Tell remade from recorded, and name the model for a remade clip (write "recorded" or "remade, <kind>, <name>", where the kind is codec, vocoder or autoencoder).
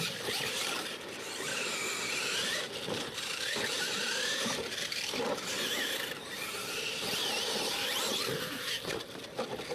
remade, vocoder, BigVGAN v2